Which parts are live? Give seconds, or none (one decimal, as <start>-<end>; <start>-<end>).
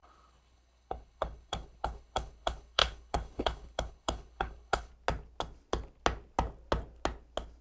4.9-7.6